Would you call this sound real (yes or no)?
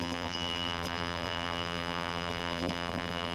no